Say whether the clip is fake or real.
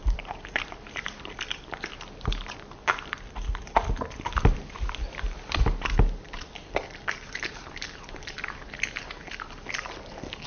fake